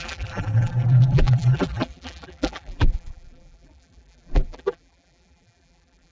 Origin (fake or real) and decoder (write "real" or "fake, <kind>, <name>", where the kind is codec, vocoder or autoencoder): fake, vocoder, BigVGAN v2